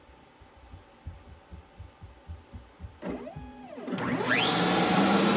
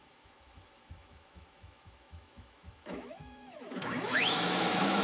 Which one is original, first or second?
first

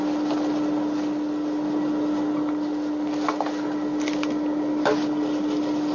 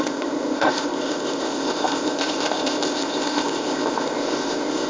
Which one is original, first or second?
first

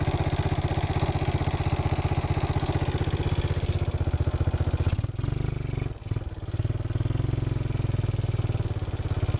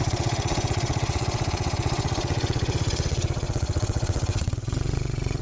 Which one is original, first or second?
first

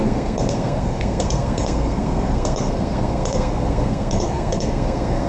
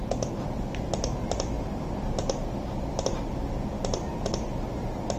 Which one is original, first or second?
second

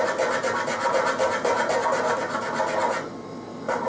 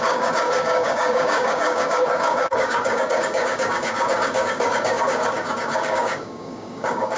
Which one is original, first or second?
first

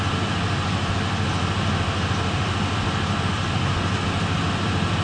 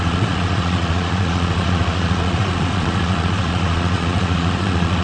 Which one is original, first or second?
first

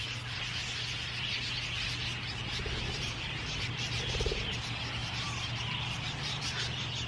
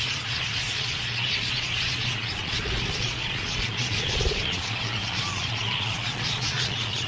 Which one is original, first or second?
first